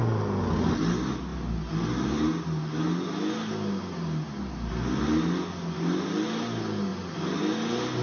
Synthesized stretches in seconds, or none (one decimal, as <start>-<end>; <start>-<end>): none